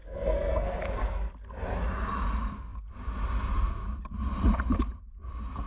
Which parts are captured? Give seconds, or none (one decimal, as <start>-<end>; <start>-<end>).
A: 1.3-5.7